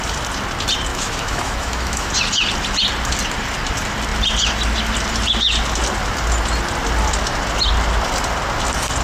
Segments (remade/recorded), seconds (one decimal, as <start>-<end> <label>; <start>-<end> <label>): 0.0-0.9 recorded; 0.9-2.1 remade; 2.1-9.0 recorded